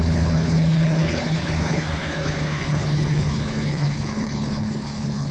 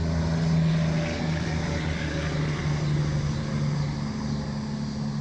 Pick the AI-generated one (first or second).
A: first